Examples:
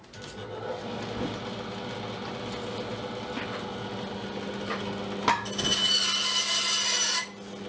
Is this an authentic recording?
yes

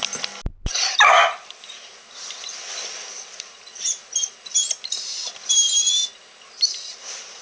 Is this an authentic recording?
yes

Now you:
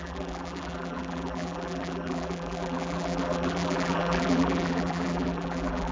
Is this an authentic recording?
no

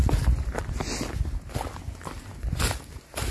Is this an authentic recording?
yes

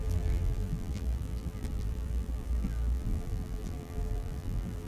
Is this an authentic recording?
no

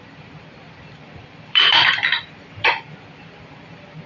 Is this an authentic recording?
no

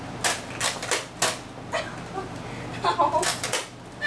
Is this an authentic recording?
yes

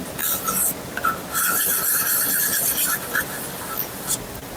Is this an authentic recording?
yes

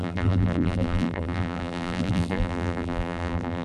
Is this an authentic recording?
no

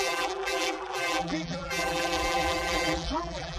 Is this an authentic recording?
no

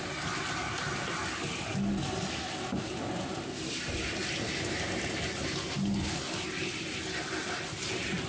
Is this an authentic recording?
yes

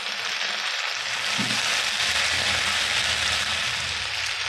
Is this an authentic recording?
yes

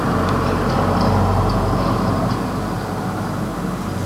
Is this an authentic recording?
yes